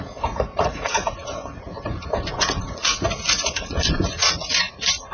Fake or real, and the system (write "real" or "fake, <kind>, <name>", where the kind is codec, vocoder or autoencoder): fake, vocoder, Vocos